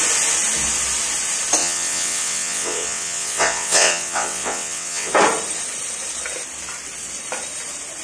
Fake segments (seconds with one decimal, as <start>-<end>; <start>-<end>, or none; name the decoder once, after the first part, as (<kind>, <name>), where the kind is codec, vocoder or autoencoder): 1.6-5.1 (vocoder, WaveNeXt)